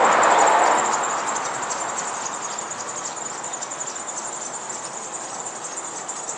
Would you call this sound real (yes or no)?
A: yes